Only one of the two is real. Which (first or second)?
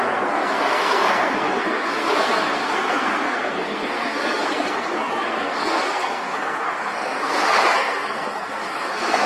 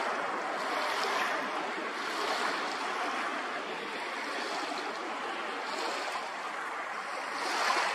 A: second